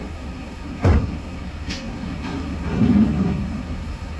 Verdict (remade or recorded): remade